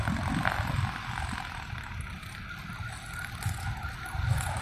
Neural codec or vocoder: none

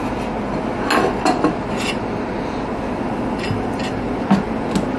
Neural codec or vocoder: none